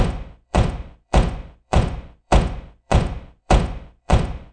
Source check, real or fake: fake